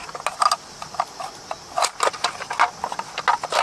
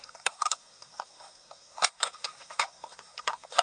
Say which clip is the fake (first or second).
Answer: second